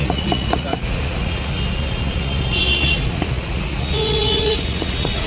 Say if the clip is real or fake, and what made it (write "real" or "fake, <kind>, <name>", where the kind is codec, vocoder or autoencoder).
fake, vocoder, Vocos